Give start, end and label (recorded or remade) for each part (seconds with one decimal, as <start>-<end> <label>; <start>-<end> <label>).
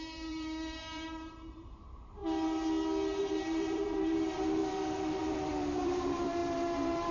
0.0-2.2 remade; 2.2-3.2 recorded; 3.2-4.6 remade; 4.6-5.2 recorded; 5.2-7.1 remade